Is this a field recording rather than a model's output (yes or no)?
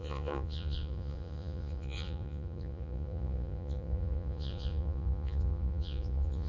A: no